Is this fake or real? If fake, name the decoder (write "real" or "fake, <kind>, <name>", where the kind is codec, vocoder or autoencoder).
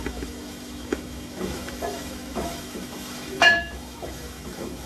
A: fake, autoencoder, DAC-VAE